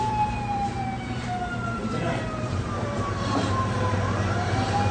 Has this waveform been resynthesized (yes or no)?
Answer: yes